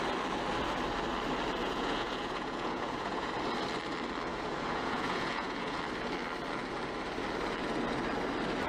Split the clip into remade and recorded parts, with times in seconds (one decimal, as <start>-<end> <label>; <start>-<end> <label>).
0.0-1.6 recorded; 1.6-3.3 remade; 3.3-4.3 recorded; 4.3-5.8 remade; 5.8-8.7 recorded